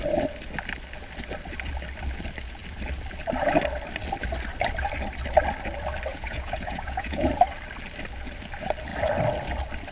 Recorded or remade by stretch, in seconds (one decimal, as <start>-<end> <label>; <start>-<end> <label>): 0.0-6.1 recorded; 6.1-7.3 remade; 7.3-9.9 recorded